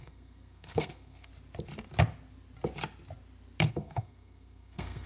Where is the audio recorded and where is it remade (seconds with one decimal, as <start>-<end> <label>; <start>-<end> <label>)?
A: 0.0-1.3 remade; 1.3-3.7 recorded; 3.7-5.1 remade

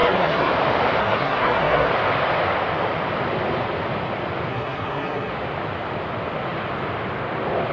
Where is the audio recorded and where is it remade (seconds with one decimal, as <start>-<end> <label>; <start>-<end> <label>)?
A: 0.0-0.5 remade; 0.5-1.0 recorded; 1.0-1.9 remade; 1.9-4.5 recorded; 4.5-5.3 remade; 5.3-7.7 recorded

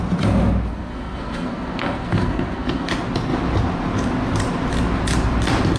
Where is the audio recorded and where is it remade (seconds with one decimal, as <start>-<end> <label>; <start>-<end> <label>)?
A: 0.0-0.7 recorded; 0.7-2.9 remade; 2.9-5.8 recorded

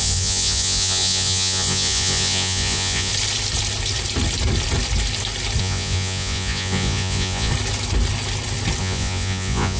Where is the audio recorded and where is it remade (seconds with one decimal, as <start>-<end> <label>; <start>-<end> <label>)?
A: 0.0-3.1 remade; 3.1-5.6 recorded; 5.6-7.5 remade; 7.5-8.8 recorded; 8.8-9.8 remade

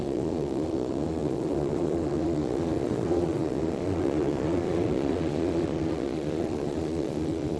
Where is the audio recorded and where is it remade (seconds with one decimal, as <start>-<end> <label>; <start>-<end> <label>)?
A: 0.0-7.6 remade

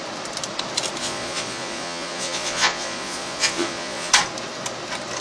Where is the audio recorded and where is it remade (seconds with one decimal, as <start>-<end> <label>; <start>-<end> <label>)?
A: 0.0-1.0 recorded; 1.0-4.1 remade; 4.1-5.2 recorded

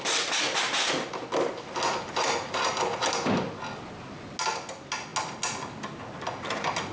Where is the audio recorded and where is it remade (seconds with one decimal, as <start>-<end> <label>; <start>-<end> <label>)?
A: 0.0-6.9 recorded